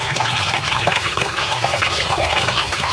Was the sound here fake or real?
fake